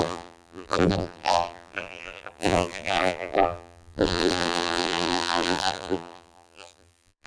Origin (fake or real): fake